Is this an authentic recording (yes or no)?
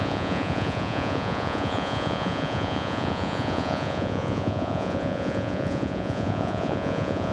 no